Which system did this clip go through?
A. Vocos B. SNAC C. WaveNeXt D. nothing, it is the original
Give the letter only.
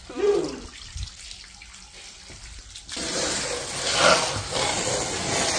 D